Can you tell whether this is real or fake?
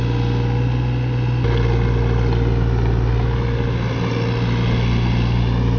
real